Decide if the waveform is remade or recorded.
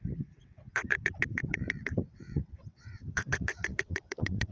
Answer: remade